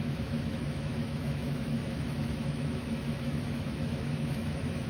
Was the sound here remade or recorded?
remade